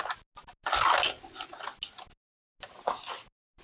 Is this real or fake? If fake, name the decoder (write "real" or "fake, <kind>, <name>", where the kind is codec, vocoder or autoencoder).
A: real